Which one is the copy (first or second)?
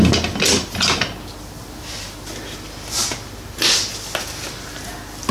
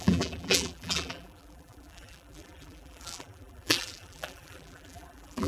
second